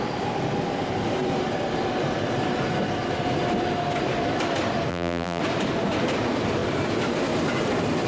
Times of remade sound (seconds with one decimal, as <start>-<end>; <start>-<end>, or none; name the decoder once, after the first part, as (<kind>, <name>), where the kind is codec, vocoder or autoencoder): 4.9-5.4 (vocoder, BigVGAN v2)